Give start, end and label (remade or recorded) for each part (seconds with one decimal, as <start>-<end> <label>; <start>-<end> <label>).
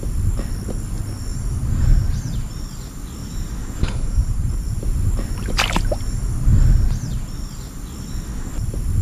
0.0-1.3 recorded; 1.3-2.6 remade; 2.6-3.2 recorded; 3.2-4.5 remade; 4.5-9.0 recorded